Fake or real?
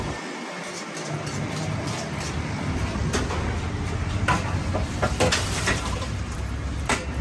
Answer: real